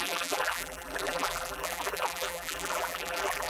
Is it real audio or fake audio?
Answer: fake